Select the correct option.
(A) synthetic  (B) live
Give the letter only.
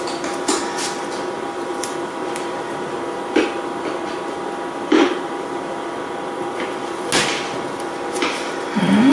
B